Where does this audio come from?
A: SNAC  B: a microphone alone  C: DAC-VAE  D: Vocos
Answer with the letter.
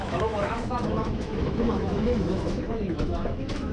C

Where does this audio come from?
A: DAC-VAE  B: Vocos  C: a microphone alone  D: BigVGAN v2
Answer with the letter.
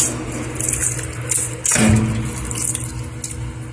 C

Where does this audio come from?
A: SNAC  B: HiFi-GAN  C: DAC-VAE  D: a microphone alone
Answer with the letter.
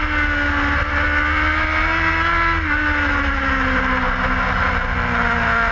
D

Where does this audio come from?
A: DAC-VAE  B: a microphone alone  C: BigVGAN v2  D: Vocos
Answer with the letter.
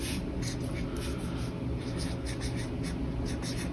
B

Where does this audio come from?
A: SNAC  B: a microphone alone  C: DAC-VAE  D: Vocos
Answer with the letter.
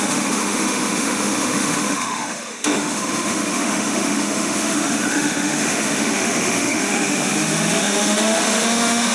C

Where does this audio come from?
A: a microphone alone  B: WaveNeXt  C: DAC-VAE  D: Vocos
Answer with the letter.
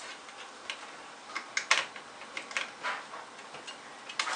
A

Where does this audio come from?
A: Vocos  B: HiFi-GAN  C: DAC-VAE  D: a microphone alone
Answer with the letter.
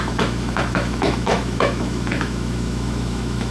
C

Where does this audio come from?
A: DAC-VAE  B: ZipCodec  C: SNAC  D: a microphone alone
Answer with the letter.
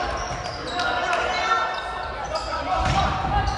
D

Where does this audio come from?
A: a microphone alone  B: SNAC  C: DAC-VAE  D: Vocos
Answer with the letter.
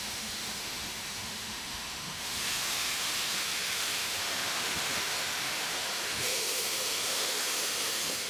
C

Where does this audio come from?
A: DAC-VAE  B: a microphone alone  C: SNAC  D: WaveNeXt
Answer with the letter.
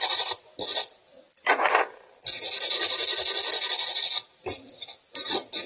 B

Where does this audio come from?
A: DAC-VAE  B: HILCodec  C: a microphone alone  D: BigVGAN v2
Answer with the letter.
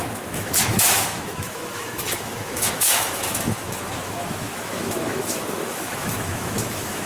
A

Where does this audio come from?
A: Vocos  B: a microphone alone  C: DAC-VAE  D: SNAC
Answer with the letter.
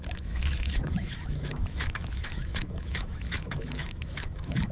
C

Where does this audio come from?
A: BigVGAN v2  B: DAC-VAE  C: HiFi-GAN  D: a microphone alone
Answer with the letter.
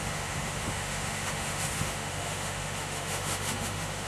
B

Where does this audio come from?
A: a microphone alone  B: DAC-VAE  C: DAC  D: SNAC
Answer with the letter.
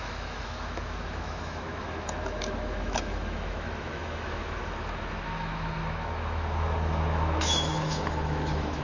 B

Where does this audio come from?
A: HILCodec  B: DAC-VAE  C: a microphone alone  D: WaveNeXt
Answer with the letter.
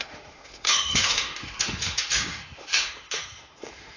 B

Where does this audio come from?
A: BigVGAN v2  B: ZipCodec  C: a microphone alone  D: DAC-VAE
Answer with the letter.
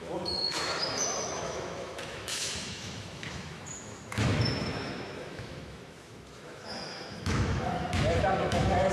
D